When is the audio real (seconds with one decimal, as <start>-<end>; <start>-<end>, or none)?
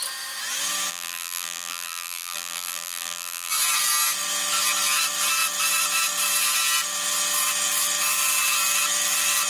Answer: 0.0-0.9; 3.5-9.5